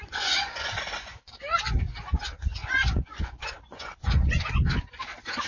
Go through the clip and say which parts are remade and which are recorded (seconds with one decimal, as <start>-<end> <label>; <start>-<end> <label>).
0.0-1.3 remade; 1.3-2.6 recorded; 2.6-4.4 remade; 4.4-5.5 recorded